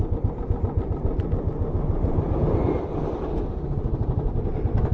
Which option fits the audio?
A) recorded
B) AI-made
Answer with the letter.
A